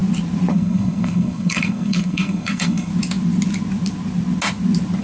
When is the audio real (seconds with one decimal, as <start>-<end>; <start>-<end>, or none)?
0.0-0.5; 2.9-5.0